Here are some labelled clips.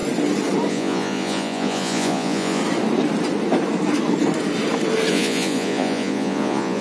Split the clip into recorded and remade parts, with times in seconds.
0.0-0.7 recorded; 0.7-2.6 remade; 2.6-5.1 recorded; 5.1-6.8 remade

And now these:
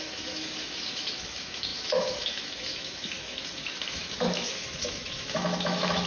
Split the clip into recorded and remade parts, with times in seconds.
0.0-6.1 remade

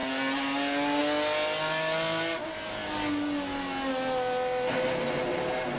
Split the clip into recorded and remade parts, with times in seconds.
0.0-5.8 recorded

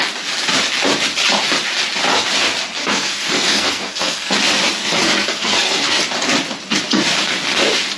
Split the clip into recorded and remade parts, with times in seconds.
0.0-2.8 recorded; 2.8-4.3 remade; 4.3-4.8 recorded; 4.8-6.0 remade; 6.0-8.0 recorded

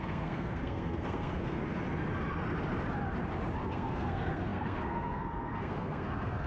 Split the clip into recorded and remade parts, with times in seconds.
0.0-1.6 remade; 1.6-3.7 recorded; 3.7-6.5 remade

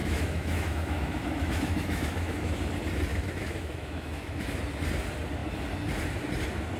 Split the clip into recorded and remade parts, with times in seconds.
0.0-2.5 remade; 2.5-3.1 recorded; 3.1-4.6 remade; 4.6-6.8 recorded